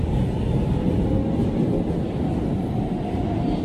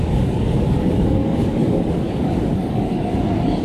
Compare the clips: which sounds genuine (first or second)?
first